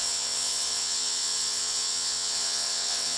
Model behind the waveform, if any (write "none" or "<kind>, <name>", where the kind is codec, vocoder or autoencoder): vocoder, WaveNeXt